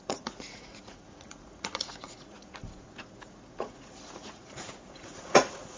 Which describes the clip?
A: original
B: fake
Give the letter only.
B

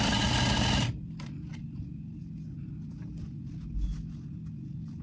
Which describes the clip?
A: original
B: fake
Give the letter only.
A